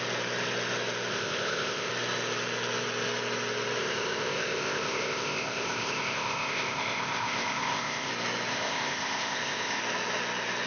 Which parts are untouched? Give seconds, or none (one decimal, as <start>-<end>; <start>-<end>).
0.0-1.1; 1.9-3.8; 8.1-8.5; 9.8-10.7